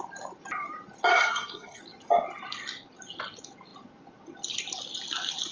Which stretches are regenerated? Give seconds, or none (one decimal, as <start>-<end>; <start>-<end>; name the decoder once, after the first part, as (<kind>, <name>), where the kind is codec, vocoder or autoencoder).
1.1-1.8 (codec, SNAC)